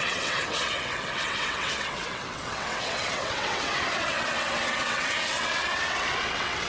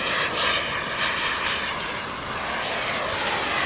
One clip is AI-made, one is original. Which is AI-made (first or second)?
first